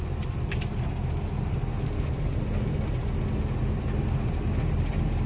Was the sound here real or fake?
real